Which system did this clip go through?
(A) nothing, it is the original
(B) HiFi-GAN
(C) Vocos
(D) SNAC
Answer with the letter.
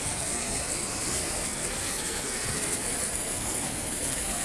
D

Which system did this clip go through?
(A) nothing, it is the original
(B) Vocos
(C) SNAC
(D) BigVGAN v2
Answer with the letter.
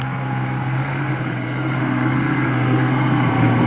C